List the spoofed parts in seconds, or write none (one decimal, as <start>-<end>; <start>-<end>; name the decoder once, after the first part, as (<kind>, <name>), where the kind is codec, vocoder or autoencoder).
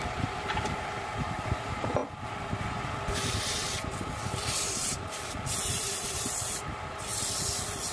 0.0-2.0 (vocoder, BigVGAN v2); 2.6-7.1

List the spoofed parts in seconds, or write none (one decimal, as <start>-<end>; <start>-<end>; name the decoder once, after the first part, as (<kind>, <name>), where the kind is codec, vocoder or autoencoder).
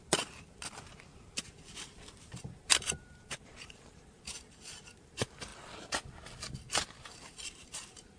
0.0-5.5 (vocoder, BigVGAN v2); 6.7-8.2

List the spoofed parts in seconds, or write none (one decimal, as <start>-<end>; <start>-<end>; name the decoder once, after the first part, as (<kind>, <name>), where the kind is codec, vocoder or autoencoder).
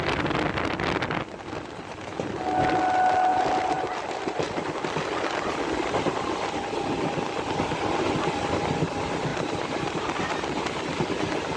3.3-4.7 (vocoder, BigVGAN v2); 9.3-10.8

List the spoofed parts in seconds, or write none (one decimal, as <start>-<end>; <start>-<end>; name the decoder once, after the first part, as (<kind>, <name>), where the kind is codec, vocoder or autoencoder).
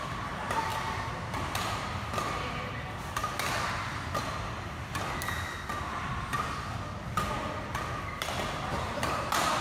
0.0-0.7 (vocoder, BigVGAN v2); 1.5-3.2; 8.1-9.6